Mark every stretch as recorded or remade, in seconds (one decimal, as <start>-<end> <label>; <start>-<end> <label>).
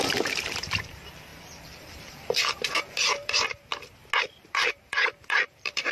0.0-3.7 remade; 3.7-4.2 recorded; 4.2-5.9 remade